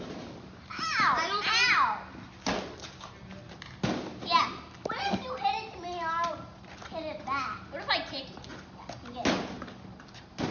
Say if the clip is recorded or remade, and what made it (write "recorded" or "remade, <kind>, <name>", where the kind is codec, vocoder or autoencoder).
recorded